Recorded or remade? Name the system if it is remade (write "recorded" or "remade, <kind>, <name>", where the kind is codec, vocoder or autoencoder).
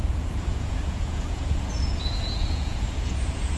remade, vocoder, Vocos